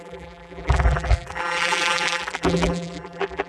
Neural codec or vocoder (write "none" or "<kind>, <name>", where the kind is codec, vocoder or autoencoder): vocoder, BigVGAN v2